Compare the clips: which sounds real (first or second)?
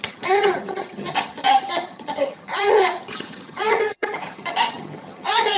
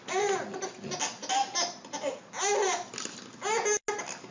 second